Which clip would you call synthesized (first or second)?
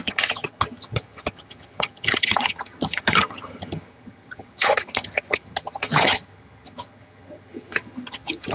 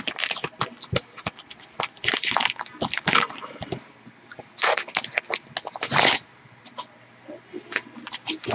first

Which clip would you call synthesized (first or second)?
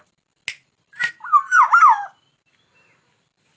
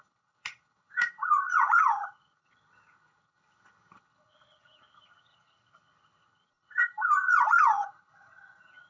second